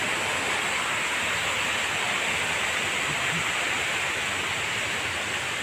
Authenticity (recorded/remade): recorded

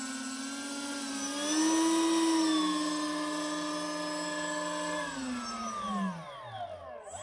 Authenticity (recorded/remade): recorded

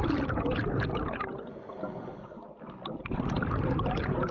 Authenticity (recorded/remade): recorded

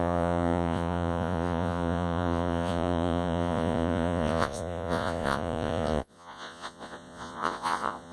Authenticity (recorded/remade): remade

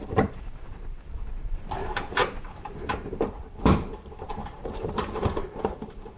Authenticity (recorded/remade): remade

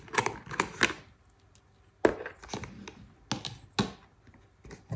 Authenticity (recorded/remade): recorded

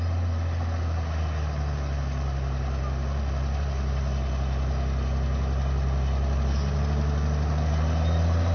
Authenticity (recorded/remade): recorded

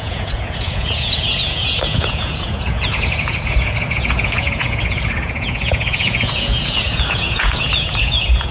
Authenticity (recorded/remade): remade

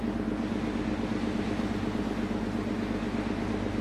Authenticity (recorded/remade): recorded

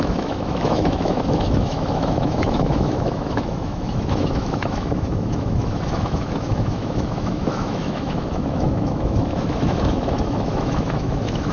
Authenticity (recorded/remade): remade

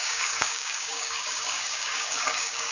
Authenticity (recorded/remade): remade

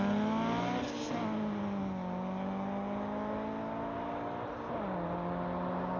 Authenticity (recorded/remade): recorded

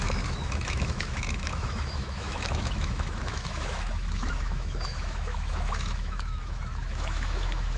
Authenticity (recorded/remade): remade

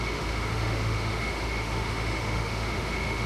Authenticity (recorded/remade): remade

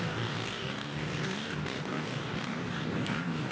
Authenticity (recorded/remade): remade